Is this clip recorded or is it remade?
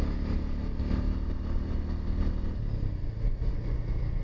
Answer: recorded